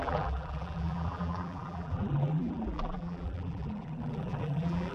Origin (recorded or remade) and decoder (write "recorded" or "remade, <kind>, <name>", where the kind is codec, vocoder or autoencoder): remade, vocoder, BigVGAN v2